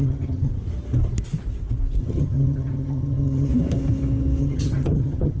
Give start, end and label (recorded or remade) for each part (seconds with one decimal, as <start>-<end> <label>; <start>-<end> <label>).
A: 0.0-0.5 remade; 0.5-2.0 recorded; 2.0-3.5 remade; 3.5-4.4 recorded; 4.4-5.4 remade